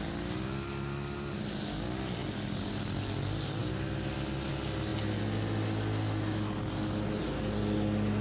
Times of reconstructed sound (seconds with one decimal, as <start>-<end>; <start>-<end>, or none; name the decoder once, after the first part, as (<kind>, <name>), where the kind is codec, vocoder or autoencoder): none